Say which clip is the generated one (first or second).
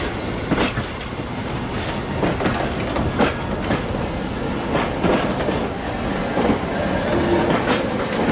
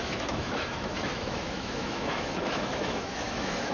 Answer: second